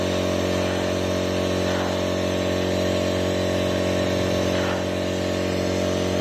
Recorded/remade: recorded